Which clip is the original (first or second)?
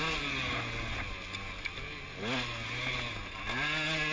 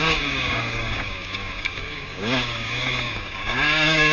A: first